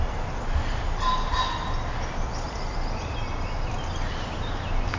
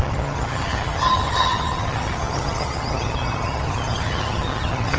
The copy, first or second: second